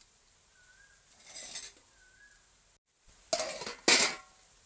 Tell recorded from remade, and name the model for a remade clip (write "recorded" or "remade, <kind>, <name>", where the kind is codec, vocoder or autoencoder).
recorded